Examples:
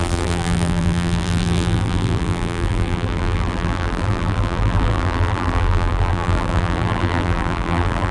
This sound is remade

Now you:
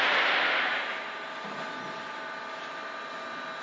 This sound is recorded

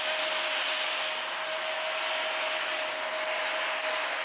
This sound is recorded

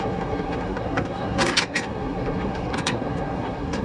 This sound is remade